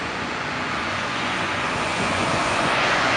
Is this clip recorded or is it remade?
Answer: remade